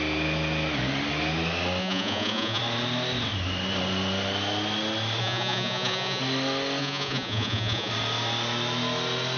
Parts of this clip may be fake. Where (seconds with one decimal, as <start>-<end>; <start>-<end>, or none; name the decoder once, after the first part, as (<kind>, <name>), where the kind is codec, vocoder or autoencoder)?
1.8-2.6 (vocoder, Vocos); 5.2-6.2; 6.8-7.9